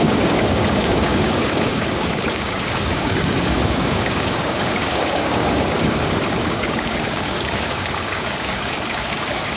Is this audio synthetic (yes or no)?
yes